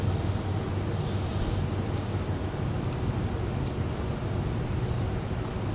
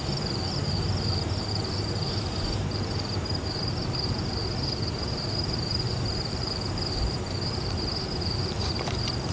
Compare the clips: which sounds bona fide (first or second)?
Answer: first